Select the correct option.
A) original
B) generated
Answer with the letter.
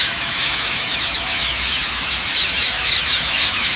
B